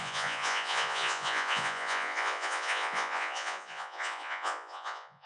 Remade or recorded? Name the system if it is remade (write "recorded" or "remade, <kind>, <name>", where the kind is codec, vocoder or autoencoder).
remade, vocoder, Vocos